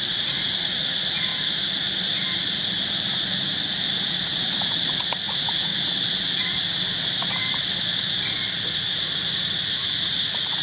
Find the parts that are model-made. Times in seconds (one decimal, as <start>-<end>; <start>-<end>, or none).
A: 0.0-1.3; 4.1-5.7; 8.7-10.6